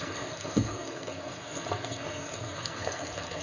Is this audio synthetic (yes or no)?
yes